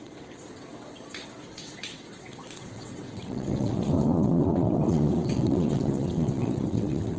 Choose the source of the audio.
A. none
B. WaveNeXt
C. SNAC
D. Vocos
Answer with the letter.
B